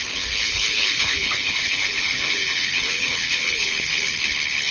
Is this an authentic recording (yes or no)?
no